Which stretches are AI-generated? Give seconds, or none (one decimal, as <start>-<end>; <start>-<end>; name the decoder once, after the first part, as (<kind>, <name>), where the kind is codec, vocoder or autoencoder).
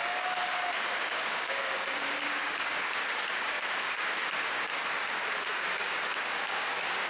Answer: 0.0-4.7 (codec, DAC); 5.5-7.1